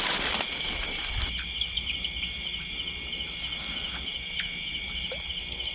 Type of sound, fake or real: real